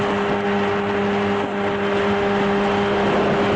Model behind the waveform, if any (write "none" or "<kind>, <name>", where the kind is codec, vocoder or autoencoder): none